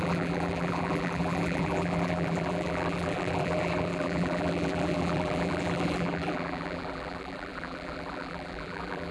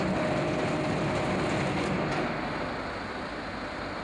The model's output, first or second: first